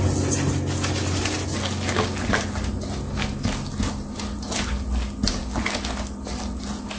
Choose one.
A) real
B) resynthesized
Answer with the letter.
A